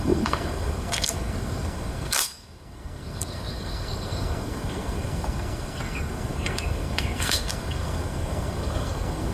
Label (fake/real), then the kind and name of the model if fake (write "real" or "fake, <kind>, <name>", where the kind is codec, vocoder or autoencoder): fake, codec, SNAC